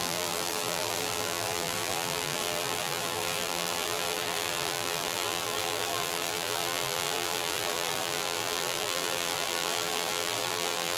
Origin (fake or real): fake